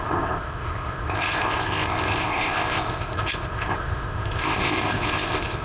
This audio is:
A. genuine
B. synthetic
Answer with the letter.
B